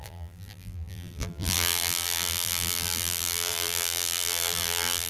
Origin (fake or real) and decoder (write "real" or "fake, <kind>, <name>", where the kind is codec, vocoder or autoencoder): fake, vocoder, BigVGAN v2